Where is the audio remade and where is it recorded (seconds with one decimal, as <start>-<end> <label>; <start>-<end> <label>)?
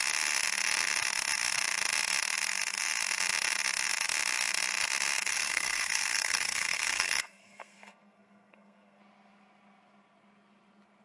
0.0-5.3 recorded; 5.3-9.0 remade; 9.0-11.0 recorded